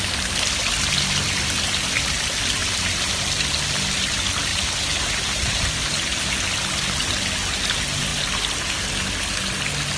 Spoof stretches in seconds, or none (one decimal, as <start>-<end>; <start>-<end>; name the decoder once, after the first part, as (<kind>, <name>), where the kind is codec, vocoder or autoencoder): 2.6-3.1 (vocoder, BigVGAN v2); 4.5-6.0